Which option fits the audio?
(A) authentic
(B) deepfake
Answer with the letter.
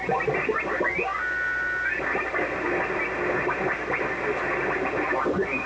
A